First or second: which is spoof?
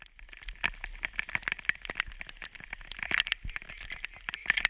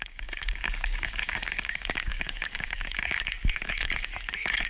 second